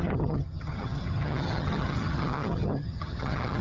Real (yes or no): no